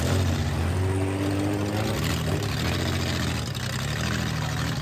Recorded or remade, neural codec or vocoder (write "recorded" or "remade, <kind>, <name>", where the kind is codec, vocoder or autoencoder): recorded